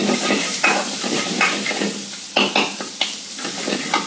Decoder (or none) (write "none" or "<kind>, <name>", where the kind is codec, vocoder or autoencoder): none